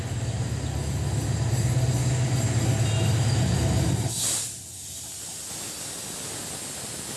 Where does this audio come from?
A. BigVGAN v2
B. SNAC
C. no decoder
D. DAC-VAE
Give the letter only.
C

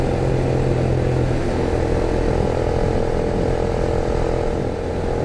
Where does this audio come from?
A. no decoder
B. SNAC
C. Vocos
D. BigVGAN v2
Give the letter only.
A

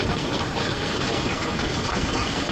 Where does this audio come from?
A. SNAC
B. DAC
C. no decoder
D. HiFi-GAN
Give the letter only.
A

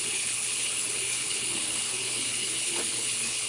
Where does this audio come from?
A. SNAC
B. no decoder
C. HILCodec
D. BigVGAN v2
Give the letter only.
C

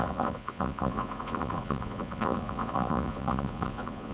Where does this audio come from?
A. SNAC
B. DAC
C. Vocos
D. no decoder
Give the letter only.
C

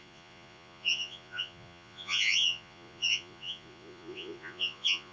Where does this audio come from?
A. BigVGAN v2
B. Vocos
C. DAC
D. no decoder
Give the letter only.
B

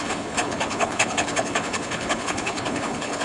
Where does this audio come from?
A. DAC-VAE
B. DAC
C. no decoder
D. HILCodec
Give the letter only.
D